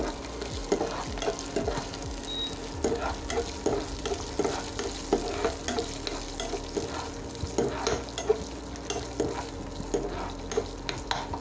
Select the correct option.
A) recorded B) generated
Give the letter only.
A